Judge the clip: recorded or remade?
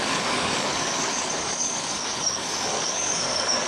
remade